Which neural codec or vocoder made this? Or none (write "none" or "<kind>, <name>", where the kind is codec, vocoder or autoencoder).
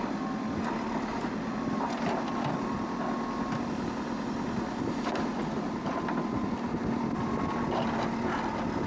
none